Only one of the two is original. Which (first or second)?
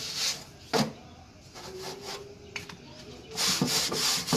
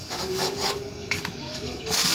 first